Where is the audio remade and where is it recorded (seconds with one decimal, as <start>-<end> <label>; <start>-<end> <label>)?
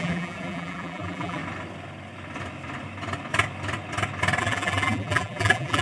0.0-1.4 remade; 1.4-4.4 recorded; 4.4-5.8 remade